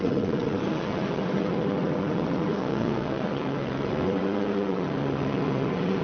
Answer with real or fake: fake